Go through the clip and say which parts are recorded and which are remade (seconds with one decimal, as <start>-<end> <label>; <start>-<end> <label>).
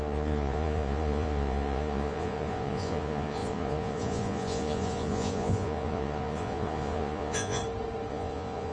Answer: 0.0-7.6 remade; 7.6-8.1 recorded; 8.1-8.7 remade